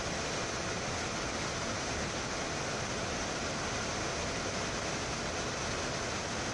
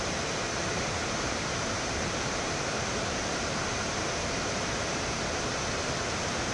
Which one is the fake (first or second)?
second